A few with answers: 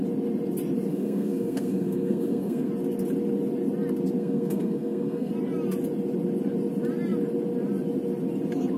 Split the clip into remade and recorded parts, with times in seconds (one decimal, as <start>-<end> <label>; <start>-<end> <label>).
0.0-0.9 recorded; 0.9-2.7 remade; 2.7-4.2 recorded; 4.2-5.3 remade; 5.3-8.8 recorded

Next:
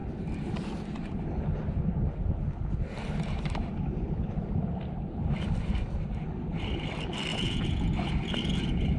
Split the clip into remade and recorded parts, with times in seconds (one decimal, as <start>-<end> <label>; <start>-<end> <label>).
0.0-7.3 recorded; 7.3-7.9 remade; 7.9-9.0 recorded

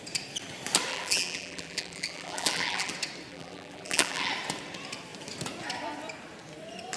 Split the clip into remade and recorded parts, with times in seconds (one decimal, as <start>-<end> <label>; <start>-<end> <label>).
0.0-0.9 recorded; 0.9-2.9 remade; 2.9-3.3 recorded; 3.3-4.3 remade; 4.3-7.0 recorded